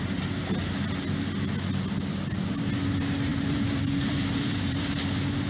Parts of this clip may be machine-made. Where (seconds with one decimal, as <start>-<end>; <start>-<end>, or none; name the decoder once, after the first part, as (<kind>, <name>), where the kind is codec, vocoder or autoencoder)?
3.3-5.5 (vocoder, BigVGAN v2)